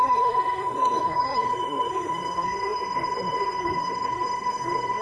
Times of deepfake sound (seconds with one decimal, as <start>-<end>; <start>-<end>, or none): 0.0-5.0